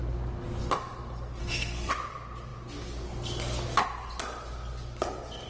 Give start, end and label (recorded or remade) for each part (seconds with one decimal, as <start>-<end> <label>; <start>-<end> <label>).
0.0-1.4 recorded; 1.4-1.9 remade; 1.9-5.5 recorded